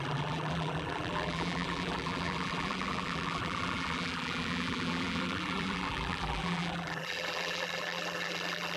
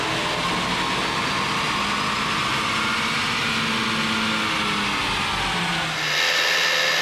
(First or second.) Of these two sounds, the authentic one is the second